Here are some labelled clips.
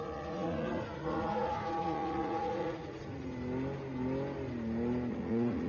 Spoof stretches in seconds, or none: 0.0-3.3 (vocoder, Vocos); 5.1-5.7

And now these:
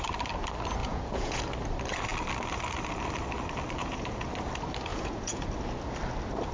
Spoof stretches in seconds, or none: 0.8-1.4 (vocoder, Vocos); 3.8-4.3; 4.9-5.5

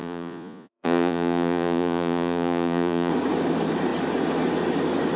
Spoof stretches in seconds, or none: 0.0-3.1 (vocoder, Vocos)

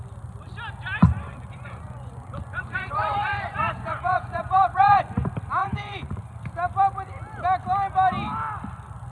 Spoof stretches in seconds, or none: 1.0-5.0 (vocoder, Vocos); 5.6-6.4